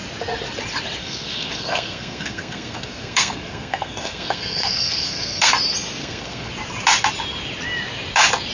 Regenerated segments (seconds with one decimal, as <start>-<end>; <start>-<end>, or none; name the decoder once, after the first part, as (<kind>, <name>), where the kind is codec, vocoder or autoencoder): 1.0-5.5 (codec, SNAC); 6.0-6.5